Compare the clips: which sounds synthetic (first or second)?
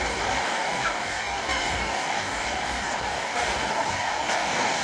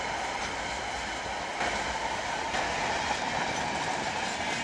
first